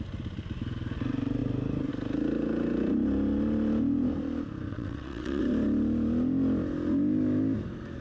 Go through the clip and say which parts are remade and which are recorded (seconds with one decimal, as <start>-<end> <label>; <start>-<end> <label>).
0.0-4.7 recorded; 4.7-5.4 remade; 5.4-8.0 recorded

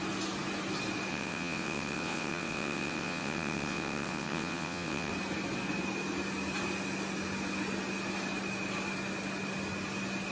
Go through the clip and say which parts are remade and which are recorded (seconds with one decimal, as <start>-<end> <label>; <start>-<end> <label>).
0.0-1.1 recorded; 1.1-5.1 remade; 5.1-10.3 recorded

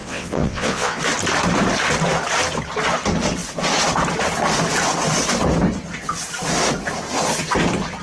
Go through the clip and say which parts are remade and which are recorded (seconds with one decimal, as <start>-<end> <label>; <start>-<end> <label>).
0.0-1.0 remade; 1.0-8.0 recorded

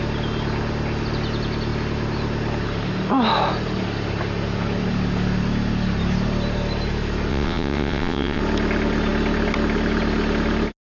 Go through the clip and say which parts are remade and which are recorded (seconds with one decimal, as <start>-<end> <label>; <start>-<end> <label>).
0.0-7.3 recorded; 7.3-8.4 remade; 8.4-10.9 recorded

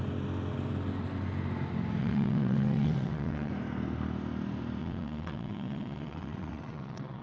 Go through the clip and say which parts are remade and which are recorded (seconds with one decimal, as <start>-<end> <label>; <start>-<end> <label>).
0.0-2.0 recorded; 2.0-3.5 remade; 3.5-4.8 recorded; 4.8-7.2 remade